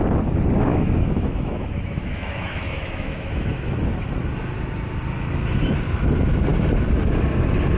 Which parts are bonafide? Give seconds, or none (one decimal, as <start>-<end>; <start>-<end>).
0.0-0.7; 3.8-7.8